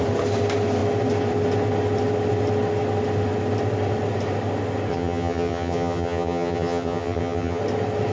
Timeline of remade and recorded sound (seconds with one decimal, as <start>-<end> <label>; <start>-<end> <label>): 0.0-4.9 recorded; 4.9-7.6 remade; 7.6-8.1 recorded